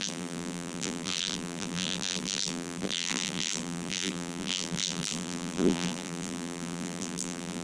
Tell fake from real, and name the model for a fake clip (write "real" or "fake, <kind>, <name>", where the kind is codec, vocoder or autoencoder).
fake, vocoder, BigVGAN v2